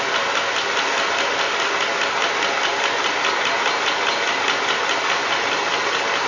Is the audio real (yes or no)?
yes